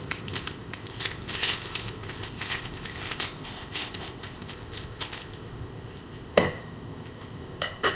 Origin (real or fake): fake